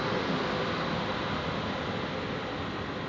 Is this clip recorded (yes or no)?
yes